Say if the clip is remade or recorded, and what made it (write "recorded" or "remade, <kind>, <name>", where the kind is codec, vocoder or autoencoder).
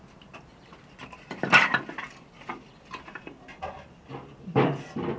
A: recorded